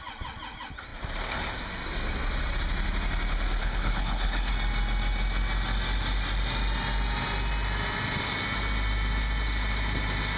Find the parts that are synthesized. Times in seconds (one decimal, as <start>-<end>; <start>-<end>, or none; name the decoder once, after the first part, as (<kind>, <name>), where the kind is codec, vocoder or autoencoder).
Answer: 3.6-4.5 (codec, HILCodec)